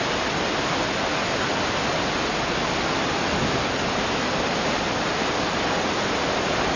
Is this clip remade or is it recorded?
recorded